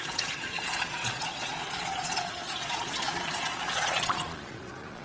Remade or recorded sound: remade